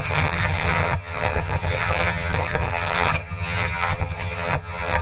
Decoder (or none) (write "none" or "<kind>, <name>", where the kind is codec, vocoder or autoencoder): vocoder, HiFi-GAN